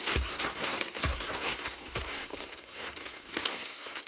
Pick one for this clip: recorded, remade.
remade